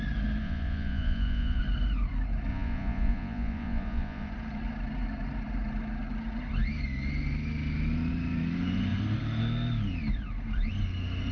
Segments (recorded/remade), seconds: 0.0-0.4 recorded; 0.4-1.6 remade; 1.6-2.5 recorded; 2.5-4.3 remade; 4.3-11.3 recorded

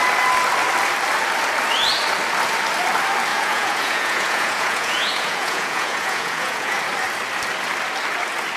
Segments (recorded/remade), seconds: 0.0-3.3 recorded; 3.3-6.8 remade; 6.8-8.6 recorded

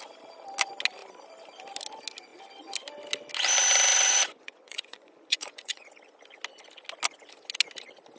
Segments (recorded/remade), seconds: 0.0-3.9 recorded; 3.9-5.9 remade; 5.9-8.2 recorded

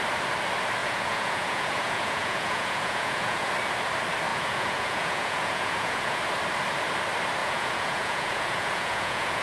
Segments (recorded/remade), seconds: 0.0-0.8 recorded; 0.8-3.5 remade; 3.5-4.3 recorded; 4.3-6.2 remade; 6.2-7.4 recorded; 7.4-9.4 remade

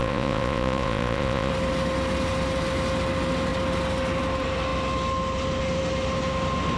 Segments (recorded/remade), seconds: 0.0-1.5 remade; 1.5-6.8 recorded

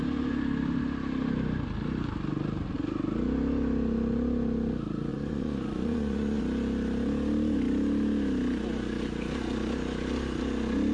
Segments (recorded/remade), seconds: 0.0-5.1 recorded; 5.1-6.4 remade; 6.4-10.9 recorded